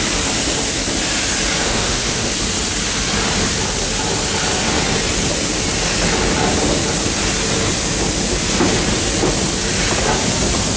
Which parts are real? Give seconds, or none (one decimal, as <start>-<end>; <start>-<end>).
0.0-1.6; 2.3-10.8

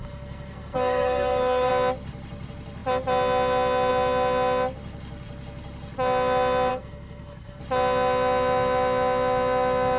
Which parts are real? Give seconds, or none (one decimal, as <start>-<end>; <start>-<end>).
1.7-6.7; 7.6-10.0